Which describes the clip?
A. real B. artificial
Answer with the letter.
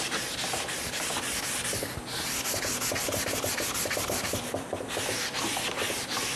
A